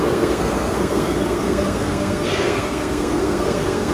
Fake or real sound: fake